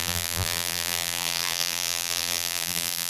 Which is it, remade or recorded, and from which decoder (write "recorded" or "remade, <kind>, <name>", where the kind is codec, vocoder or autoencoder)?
remade, vocoder, BigVGAN v2